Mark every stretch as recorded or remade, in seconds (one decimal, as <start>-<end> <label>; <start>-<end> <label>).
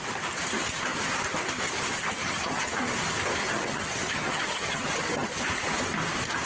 0.0-2.2 recorded; 2.2-2.7 remade; 2.7-3.4 recorded; 3.4-5.4 remade; 5.4-6.5 recorded